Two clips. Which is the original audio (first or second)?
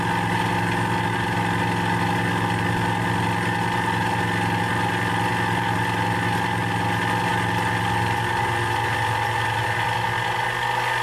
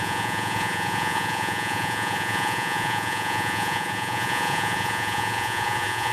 first